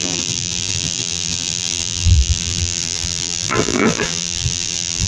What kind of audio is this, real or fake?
fake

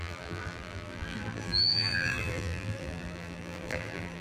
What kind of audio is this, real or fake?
fake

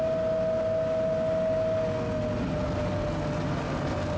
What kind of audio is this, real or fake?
real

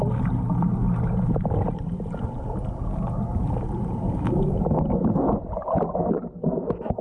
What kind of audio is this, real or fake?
real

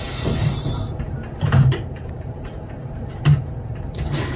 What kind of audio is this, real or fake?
fake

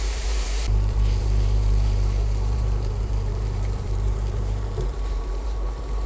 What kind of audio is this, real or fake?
fake